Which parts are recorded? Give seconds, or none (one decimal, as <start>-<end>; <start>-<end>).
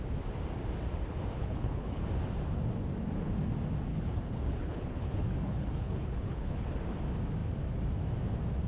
0.0-1.4; 2.0-3.9; 6.8-8.7